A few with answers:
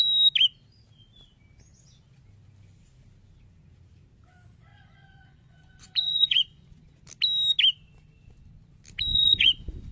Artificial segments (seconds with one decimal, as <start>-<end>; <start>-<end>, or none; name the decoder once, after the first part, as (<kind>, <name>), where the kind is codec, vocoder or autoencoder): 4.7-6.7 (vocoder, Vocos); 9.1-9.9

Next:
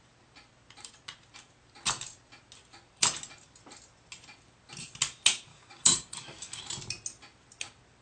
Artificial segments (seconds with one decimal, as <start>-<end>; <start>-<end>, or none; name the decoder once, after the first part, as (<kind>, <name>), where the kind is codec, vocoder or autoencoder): 5.5-6.6 (codec, DAC)

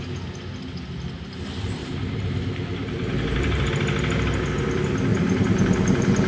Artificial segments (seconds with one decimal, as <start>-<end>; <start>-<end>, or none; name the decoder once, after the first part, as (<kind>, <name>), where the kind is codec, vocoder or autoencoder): 1.8-3.7 (vocoder, BigVGAN v2); 5.1-6.3

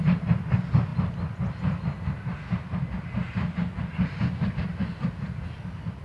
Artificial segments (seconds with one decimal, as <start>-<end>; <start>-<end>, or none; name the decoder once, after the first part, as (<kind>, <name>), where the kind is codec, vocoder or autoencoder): none

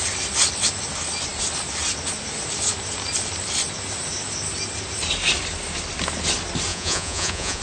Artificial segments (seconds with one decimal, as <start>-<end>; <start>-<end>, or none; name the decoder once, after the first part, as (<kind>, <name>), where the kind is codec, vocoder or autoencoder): 6.7-7.6 (vocoder, Vocos)